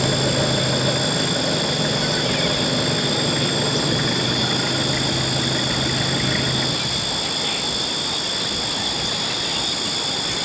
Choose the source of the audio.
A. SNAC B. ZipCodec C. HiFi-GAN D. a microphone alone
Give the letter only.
D